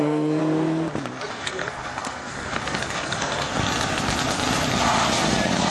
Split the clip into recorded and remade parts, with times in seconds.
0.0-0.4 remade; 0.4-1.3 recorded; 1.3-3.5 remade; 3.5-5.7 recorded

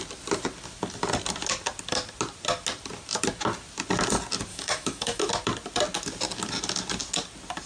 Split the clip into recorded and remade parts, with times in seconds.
0.0-4.5 recorded; 4.5-5.3 remade; 5.3-7.7 recorded

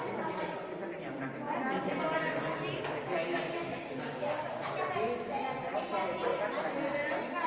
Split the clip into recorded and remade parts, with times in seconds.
0.0-3.7 recorded; 3.7-4.7 remade; 4.7-7.5 recorded

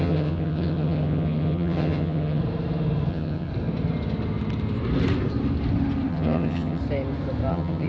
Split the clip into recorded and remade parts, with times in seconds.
0.0-2.4 remade; 2.4-3.1 recorded; 3.1-3.5 remade; 3.5-6.1 recorded; 6.1-6.8 remade; 6.8-7.5 recorded; 7.5-7.9 remade

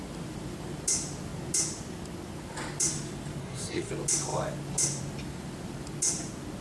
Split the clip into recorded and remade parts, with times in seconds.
0.0-3.4 recorded; 3.4-3.9 remade; 3.9-6.6 recorded

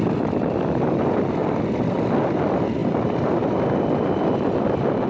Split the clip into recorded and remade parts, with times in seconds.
0.0-5.1 recorded

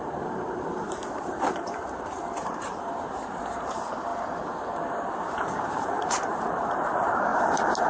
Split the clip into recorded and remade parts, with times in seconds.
0.0-7.9 remade

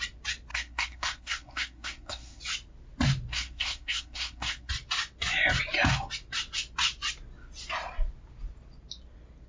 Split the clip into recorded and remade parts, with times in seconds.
0.0-0.5 recorded; 0.5-2.4 remade; 2.4-3.3 recorded; 3.3-4.7 remade; 4.7-9.5 recorded